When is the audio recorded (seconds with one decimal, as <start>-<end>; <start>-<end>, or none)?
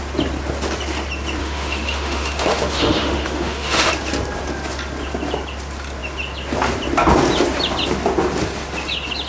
0.0-1.4; 3.9-9.3